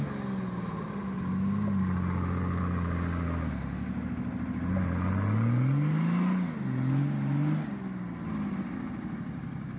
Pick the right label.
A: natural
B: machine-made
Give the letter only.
A